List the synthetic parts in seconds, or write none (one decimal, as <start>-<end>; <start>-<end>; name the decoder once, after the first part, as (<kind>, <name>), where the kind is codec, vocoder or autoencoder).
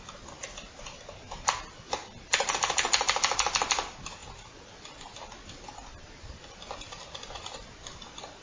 none